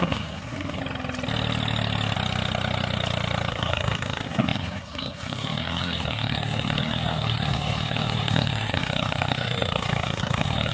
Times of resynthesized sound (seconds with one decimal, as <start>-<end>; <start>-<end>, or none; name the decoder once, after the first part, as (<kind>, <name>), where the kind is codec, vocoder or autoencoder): 0.0-0.8 (codec, SNAC); 3.5-10.7